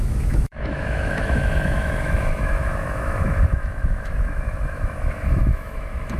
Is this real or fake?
fake